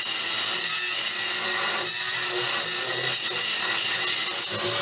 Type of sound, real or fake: real